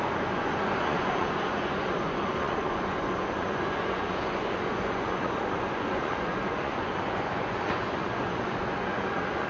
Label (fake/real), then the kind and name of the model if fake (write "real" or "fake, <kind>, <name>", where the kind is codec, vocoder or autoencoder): fake, vocoder, Vocos